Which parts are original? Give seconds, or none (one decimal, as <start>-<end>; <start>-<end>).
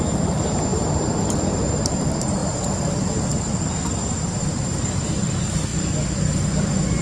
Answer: 2.4-3.9; 5.7-6.6